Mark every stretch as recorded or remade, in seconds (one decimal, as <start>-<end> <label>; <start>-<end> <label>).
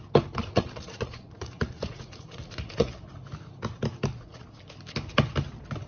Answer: 0.0-0.4 recorded; 0.4-3.0 remade; 3.0-4.1 recorded; 4.1-4.7 remade; 4.7-5.9 recorded